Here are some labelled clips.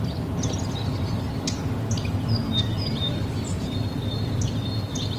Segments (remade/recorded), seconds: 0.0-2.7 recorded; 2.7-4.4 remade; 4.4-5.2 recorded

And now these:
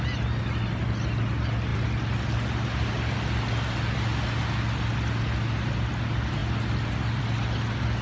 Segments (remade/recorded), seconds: 0.0-8.0 recorded

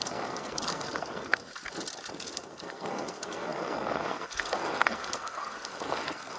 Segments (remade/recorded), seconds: 0.0-1.5 remade; 1.5-2.1 recorded; 2.1-6.4 remade

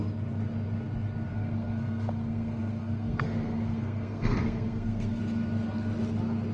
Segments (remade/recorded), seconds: 0.0-1.3 recorded; 1.3-5.2 remade; 5.2-6.5 recorded

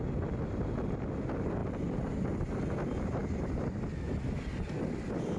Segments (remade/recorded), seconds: 0.0-5.4 recorded

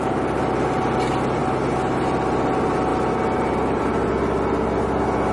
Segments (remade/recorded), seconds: 0.0-5.3 recorded

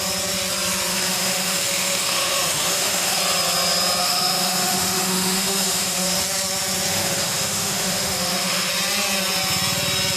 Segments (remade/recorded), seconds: 0.0-0.9 recorded; 0.9-3.2 remade; 3.2-4.0 recorded; 4.0-6.2 remade; 6.2-6.9 recorded; 6.9-8.7 remade; 8.7-10.2 recorded